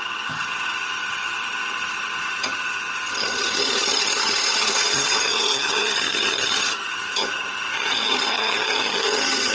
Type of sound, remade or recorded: remade